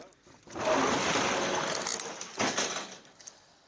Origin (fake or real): real